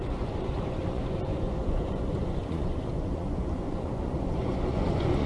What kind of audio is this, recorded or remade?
remade